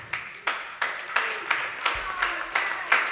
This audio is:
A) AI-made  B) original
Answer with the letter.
B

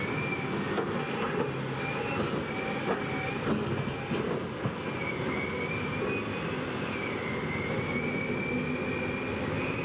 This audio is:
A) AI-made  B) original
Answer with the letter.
B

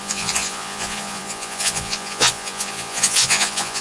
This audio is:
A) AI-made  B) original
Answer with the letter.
A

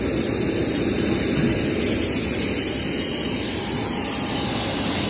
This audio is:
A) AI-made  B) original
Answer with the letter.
B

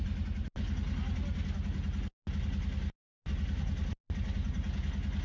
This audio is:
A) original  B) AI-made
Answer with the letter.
A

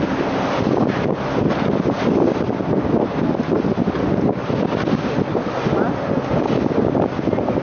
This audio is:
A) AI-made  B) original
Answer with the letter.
B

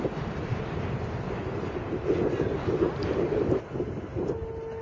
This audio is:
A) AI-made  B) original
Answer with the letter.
B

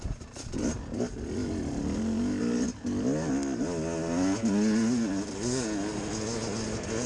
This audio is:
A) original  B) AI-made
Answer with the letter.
A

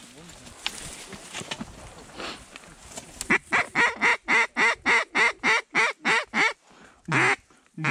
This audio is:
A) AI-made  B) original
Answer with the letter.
B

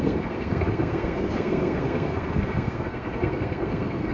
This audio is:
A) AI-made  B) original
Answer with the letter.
A